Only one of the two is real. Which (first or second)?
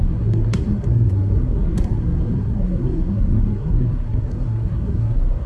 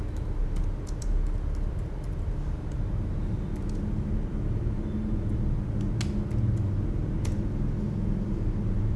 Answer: second